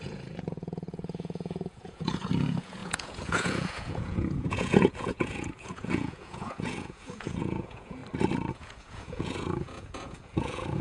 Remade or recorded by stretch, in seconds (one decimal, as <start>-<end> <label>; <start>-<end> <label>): 0.0-8.0 remade; 8.0-8.5 recorded; 8.5-10.8 remade